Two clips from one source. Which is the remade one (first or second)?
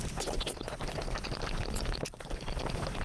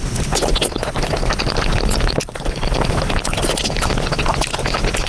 first